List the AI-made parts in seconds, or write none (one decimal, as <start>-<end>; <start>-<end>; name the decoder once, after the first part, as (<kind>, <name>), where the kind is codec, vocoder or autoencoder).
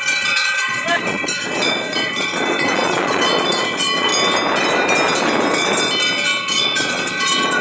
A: 0.0-4.1 (vocoder, Vocos); 6.4-7.6